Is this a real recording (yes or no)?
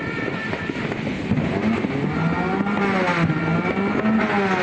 yes